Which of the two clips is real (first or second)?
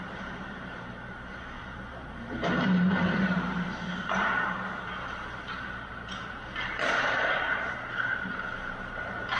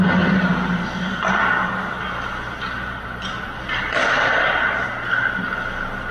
second